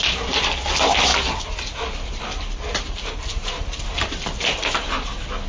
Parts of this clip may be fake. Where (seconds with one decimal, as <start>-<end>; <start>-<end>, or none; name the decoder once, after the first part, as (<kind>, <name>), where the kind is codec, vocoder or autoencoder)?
none